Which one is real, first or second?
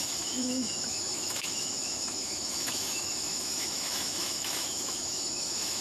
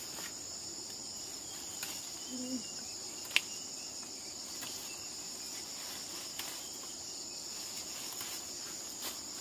second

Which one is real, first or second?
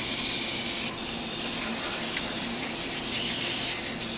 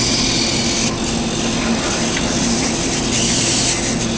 second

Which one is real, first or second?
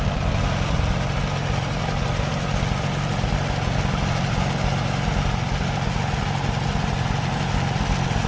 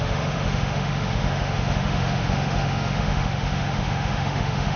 first